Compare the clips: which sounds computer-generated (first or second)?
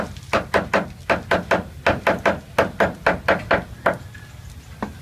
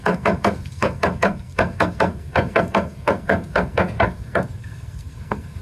second